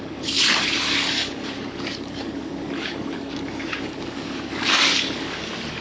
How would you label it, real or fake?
fake